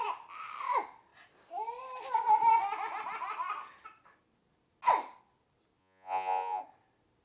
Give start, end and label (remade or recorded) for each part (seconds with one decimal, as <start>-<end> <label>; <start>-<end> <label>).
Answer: 0.0-5.8 recorded; 5.8-6.6 remade; 6.6-7.2 recorded